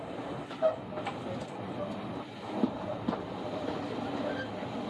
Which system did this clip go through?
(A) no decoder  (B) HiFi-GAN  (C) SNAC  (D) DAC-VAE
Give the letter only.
A